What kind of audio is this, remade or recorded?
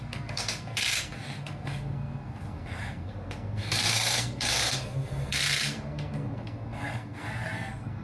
remade